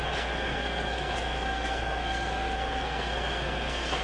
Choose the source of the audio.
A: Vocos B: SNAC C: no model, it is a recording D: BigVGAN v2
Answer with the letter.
B